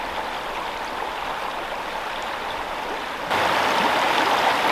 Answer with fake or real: real